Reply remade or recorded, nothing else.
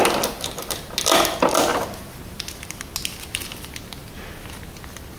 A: recorded